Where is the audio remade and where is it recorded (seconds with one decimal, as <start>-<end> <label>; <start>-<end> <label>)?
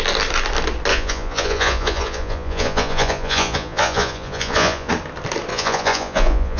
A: 0.0-0.9 recorded; 0.9-4.9 remade; 4.9-5.5 recorded; 5.5-6.6 remade